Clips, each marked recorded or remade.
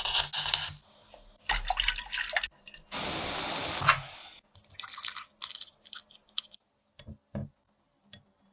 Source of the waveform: recorded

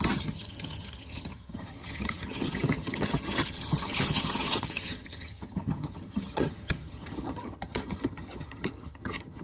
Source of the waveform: remade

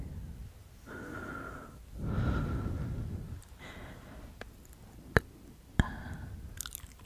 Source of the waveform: recorded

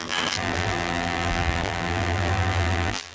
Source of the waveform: remade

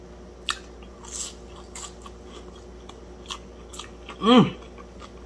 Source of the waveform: recorded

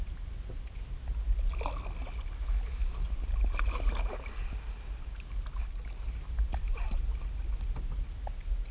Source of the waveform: recorded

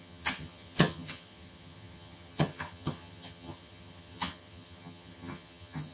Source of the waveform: remade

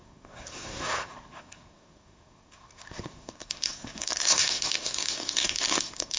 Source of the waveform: remade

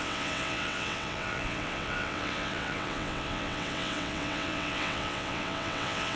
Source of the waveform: remade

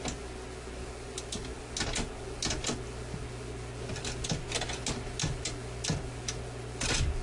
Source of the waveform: recorded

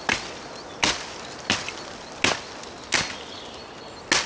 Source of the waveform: recorded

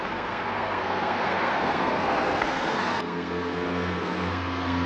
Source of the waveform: remade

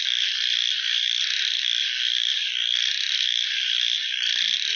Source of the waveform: recorded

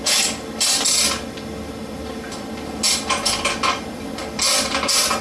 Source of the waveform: recorded